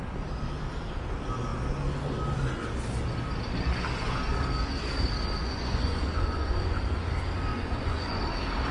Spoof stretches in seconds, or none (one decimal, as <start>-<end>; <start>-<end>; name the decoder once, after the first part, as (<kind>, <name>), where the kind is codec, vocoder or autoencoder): 5.4-6.8 (vocoder, Vocos); 7.5-8.2